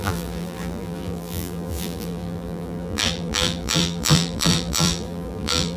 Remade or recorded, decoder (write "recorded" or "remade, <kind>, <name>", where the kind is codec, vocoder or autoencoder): remade, vocoder, BigVGAN v2